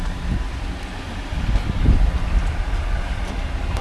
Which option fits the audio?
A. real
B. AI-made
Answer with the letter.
A